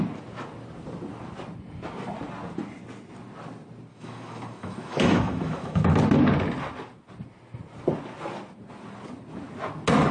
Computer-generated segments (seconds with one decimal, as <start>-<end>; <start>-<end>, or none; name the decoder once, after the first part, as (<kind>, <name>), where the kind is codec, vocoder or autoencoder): 3.9-5.9 (autoencoder, DAC-VAE)